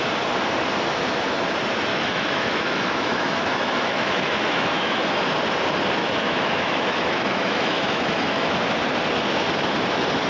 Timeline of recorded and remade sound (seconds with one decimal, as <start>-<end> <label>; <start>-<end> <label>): 0.0-1.9 recorded; 1.9-5.0 remade; 5.0-6.0 recorded; 6.0-8.5 remade; 8.5-10.3 recorded